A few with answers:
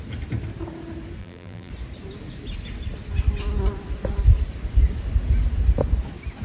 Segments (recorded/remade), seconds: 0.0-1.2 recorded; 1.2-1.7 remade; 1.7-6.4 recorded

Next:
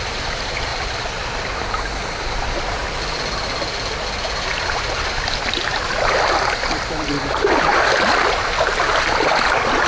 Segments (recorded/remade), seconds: 0.0-0.7 remade; 0.7-2.4 recorded; 2.4-2.8 remade; 2.8-4.2 recorded; 4.2-9.9 remade